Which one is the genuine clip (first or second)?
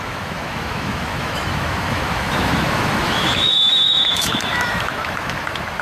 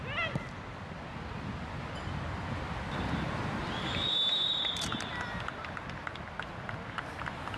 second